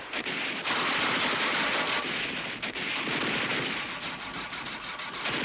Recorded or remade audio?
recorded